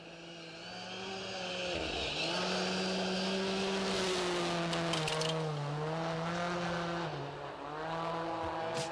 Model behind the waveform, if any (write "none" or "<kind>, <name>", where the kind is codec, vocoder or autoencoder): none